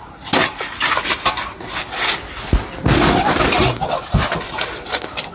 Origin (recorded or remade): recorded